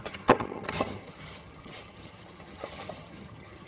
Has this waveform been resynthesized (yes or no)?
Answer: yes